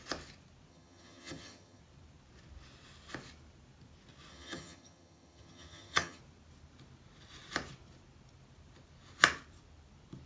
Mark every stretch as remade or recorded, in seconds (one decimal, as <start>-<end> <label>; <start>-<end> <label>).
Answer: 0.0-0.7 recorded; 0.7-1.8 remade; 1.8-4.3 recorded; 4.3-6.2 remade; 6.2-10.3 recorded